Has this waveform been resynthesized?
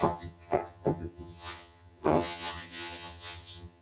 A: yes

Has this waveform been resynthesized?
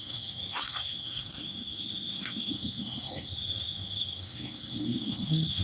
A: yes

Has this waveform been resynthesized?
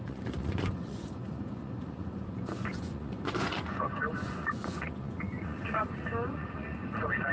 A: yes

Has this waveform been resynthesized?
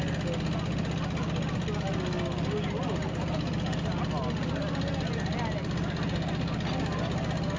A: no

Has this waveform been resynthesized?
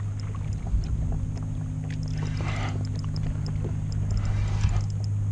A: no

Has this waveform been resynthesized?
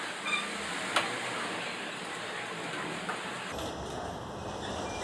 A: no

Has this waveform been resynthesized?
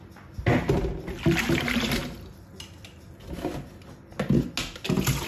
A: no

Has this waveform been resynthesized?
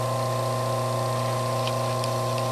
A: no